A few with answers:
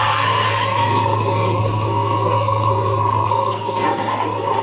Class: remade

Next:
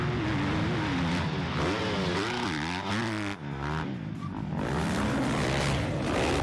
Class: recorded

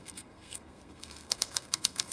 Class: remade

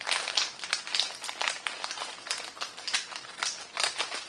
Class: recorded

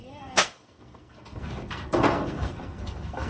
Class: remade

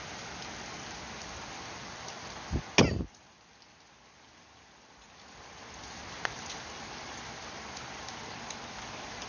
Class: recorded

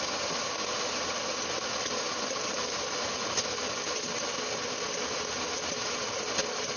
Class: recorded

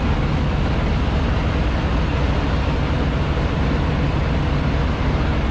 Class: recorded